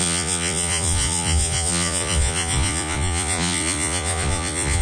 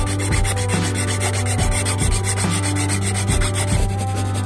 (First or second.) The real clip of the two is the second